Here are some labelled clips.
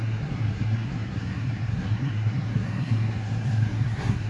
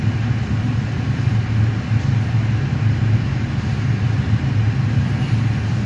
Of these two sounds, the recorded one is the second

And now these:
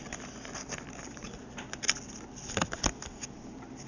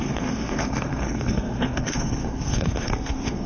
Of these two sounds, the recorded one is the first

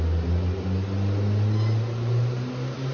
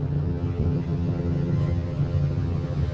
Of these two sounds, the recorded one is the first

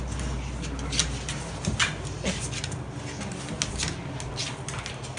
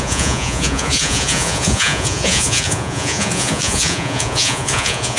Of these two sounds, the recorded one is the first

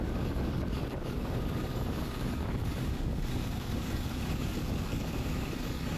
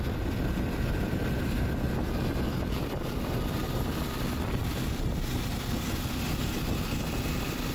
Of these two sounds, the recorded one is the second